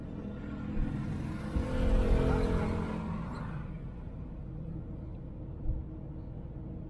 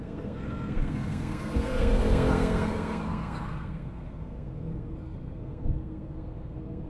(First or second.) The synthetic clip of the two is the second